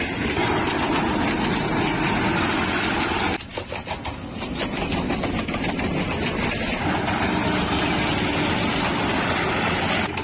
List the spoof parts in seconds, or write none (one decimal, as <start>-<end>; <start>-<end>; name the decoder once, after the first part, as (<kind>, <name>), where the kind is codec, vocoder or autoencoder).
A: none